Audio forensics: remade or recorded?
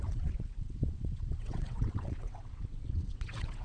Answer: remade